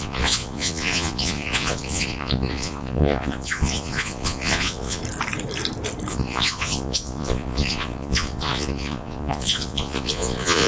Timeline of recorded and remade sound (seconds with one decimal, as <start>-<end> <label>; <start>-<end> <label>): 0.0-5.0 remade; 5.0-6.1 recorded; 6.1-10.7 remade